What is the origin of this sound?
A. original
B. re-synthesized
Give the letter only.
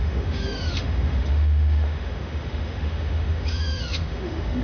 B